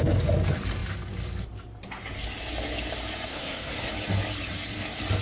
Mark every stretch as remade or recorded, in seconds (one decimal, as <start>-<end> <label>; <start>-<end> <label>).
0.0-3.3 recorded; 3.3-3.9 remade; 3.9-5.2 recorded